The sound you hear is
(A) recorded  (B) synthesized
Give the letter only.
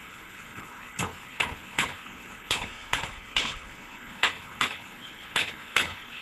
B